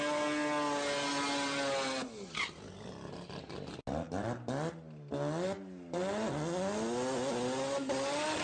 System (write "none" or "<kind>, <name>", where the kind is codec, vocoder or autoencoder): none